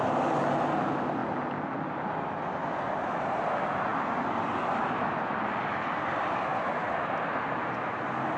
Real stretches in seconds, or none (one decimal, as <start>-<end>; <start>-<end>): 0.0-6.5; 7.3-8.4